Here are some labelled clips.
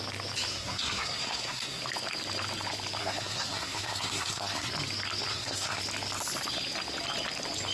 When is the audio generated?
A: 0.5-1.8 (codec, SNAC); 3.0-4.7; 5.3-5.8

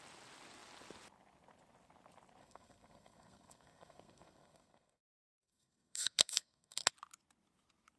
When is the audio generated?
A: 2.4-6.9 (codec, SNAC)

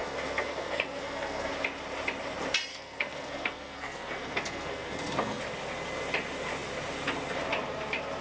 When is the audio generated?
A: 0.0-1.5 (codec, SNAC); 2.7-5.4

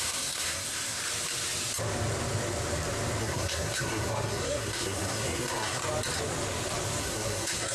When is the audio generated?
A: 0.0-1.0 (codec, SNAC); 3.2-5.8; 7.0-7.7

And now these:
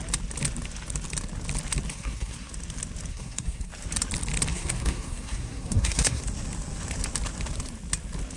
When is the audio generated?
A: 1.9-2.5 (codec, SNAC); 3.1-3.7; 4.5-6.2